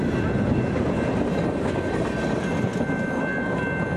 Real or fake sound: real